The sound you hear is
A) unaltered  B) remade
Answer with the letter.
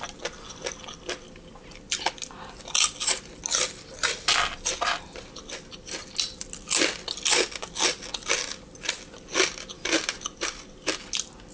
A